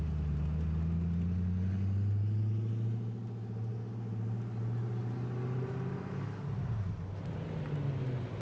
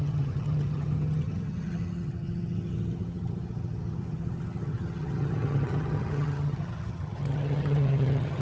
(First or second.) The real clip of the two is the first